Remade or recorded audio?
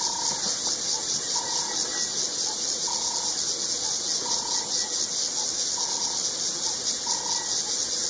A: recorded